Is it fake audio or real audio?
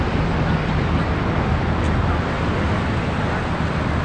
real